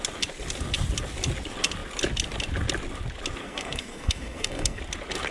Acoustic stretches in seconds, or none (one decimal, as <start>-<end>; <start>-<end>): 0.0-3.4; 4.8-5.3